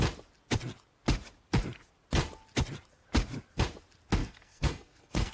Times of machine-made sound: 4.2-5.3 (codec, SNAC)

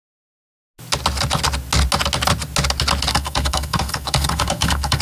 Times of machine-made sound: 3.1-5.0 (codec, SNAC)

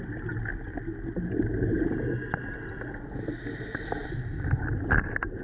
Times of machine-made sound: none

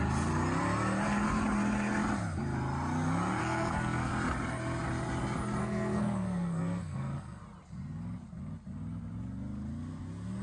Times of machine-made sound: 3.4-4.1 (codec, SNAC); 5.6-7.4

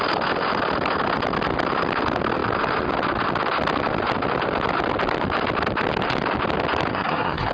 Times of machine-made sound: 6.9-7.5 (codec, SNAC)

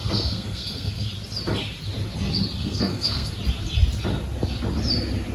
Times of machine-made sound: 0.0-1.1 (codec, SNAC); 2.6-3.3

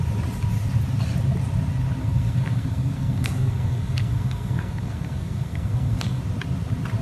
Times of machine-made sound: 2.0-6.2 (codec, SNAC)

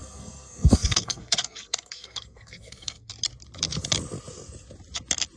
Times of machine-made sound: 0.0-3.1 (codec, SNAC)